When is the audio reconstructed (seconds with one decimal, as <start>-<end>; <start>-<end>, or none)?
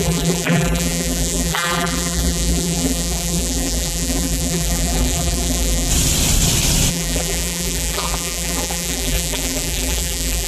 0.0-5.9; 6.9-10.5